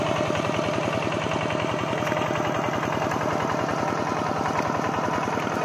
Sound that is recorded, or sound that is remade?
recorded